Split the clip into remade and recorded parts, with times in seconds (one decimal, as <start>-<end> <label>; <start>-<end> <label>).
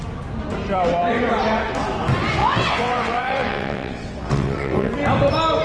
0.0-2.4 recorded; 2.4-4.9 remade; 4.9-5.6 recorded